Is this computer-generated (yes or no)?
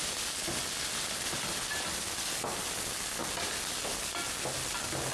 no